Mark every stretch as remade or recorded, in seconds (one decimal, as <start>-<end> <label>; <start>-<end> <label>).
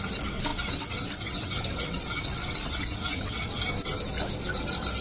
0.0-0.5 recorded; 0.5-3.5 remade; 3.5-5.0 recorded